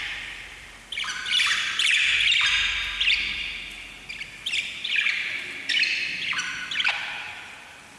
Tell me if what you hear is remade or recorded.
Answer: recorded